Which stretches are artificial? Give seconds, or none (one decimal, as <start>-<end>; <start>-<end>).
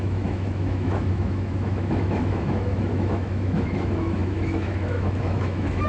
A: 0.0-5.9